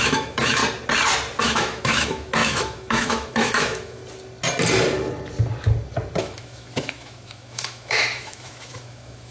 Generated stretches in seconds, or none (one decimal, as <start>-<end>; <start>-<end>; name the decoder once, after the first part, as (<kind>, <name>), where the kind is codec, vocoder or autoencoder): 0.0-0.6 (autoencoder, DAC-VAE); 1.4-4.0; 6.2-9.3